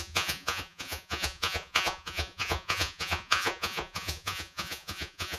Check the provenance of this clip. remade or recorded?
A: remade